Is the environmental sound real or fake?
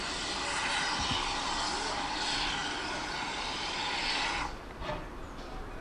real